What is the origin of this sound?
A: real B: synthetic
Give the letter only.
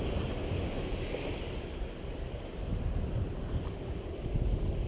A